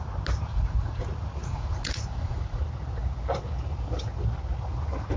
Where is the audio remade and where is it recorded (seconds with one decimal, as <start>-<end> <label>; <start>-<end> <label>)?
0.0-0.5 recorded; 0.5-1.0 remade; 1.0-1.4 recorded; 1.4-2.6 remade; 2.6-5.2 recorded